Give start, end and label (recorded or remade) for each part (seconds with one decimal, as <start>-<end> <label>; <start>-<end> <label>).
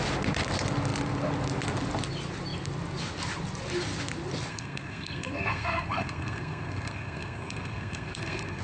0.0-4.5 recorded; 4.5-8.6 remade